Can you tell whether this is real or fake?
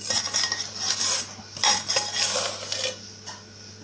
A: real